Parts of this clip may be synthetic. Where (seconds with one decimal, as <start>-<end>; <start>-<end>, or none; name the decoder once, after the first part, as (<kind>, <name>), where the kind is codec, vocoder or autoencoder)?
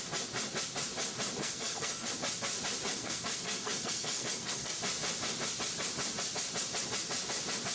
1.4-2.1 (codec, SNAC); 2.9-4.8